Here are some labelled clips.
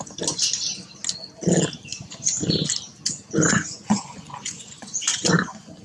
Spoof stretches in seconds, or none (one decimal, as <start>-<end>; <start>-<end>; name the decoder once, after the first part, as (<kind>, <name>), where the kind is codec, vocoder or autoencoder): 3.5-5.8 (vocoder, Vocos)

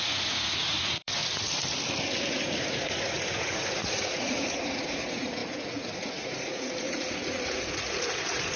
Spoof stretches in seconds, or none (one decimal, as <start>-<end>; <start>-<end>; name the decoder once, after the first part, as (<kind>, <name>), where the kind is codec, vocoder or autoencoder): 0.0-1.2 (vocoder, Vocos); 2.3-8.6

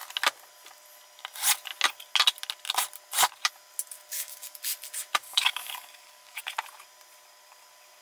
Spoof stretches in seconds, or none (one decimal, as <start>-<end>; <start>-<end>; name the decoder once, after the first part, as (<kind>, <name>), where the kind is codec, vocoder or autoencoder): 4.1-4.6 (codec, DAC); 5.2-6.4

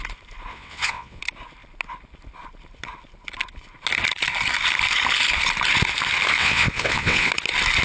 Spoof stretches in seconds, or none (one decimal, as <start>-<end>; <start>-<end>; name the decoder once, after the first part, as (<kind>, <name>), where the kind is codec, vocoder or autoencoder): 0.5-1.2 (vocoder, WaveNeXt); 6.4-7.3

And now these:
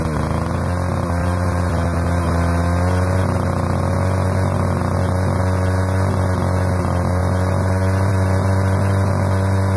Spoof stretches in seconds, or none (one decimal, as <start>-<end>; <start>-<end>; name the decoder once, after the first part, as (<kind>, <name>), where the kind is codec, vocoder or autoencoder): 1.2-1.7 (vocoder, BigVGAN v2)

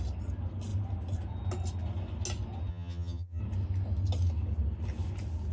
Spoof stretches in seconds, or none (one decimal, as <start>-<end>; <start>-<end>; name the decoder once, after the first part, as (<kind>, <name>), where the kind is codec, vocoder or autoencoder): 2.7-3.4 (vocoder, HiFi-GAN)

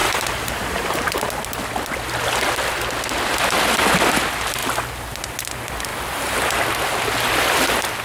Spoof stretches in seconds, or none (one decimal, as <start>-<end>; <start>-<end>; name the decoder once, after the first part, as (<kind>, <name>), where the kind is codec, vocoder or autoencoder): 0.0-1.3 (vocoder, BigVGAN v2); 5.9-6.6

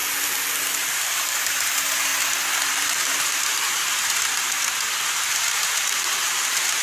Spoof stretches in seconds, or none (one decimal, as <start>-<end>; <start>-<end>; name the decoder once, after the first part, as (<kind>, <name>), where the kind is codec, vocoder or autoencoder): 0.9-2.1 (vocoder, BigVGAN v2); 2.7-6.8